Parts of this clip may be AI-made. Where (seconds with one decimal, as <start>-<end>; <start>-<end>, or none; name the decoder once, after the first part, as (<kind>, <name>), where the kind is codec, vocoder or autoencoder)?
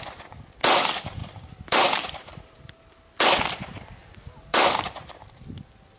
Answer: 1.2-2.7 (vocoder, BigVGAN v2); 4.0-5.4